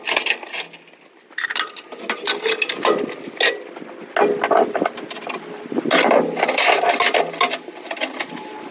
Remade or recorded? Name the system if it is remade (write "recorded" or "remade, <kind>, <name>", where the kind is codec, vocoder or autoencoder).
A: recorded